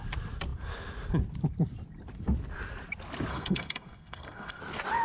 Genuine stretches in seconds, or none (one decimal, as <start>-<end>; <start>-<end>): 0.0-3.3; 4.6-5.0